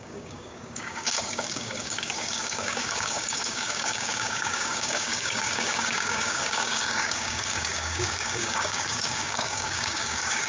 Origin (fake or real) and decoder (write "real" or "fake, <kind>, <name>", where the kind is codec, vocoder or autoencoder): fake, codec, DAC